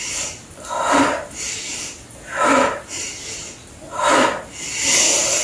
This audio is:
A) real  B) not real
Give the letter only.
A